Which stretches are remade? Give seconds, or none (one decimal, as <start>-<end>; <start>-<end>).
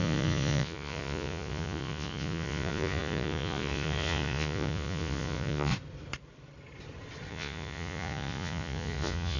0.0-5.7; 7.3-9.4